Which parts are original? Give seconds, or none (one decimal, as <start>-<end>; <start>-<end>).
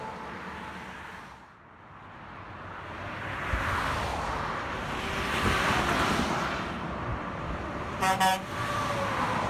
0.0-4.1; 6.1-7.1; 8.2-9.5